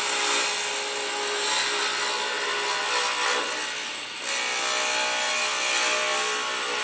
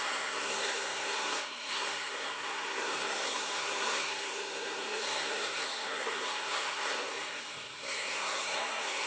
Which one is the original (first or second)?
first